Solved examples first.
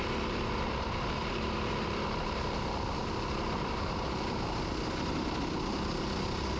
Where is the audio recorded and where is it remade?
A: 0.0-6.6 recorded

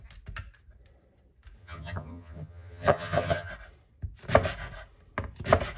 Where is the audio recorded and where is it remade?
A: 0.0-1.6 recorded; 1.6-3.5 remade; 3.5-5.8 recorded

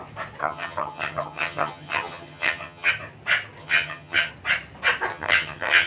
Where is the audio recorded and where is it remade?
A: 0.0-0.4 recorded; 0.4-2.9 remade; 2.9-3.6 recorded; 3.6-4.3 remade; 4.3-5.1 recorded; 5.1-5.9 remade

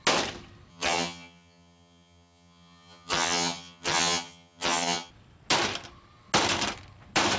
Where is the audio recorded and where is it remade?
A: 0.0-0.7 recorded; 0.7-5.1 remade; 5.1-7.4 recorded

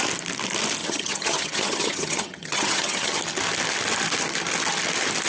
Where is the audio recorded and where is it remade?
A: 0.0-0.8 recorded; 0.8-3.2 remade; 3.2-5.3 recorded